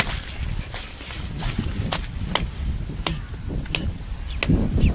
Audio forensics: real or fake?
real